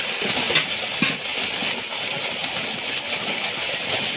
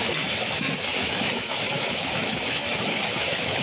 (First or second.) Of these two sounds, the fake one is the second